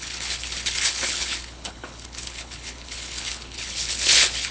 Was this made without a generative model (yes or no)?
no